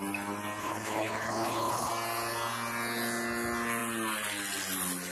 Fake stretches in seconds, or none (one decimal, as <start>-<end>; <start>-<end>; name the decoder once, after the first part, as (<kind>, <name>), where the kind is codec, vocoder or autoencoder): 0.6-1.9 (codec, HILCodec)